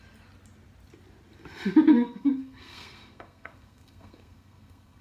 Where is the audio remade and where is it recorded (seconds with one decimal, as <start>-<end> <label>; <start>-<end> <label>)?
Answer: 0.0-1.9 recorded; 1.9-5.0 remade